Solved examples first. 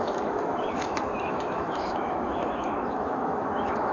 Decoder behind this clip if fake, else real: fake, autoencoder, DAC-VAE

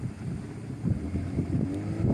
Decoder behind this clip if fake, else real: real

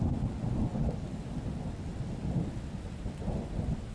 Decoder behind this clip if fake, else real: real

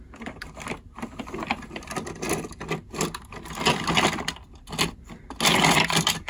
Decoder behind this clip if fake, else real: real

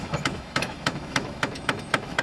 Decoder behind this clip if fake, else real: fake, autoencoder, DAC-VAE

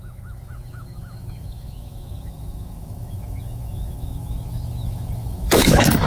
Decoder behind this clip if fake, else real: fake, autoencoder, DAC-VAE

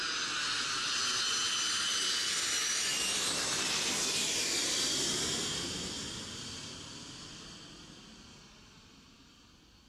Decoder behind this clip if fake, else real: real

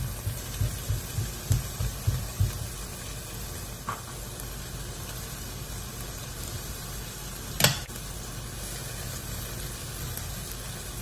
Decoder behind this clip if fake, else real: real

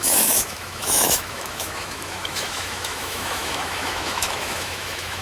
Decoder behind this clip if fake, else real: fake, autoencoder, DAC-VAE